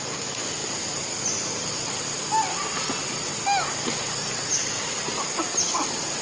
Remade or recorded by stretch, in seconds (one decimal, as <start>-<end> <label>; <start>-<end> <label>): 0.0-6.2 recorded